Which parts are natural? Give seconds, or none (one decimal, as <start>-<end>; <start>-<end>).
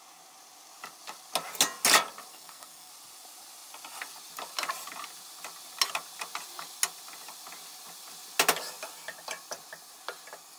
0.0-2.3; 2.9-10.6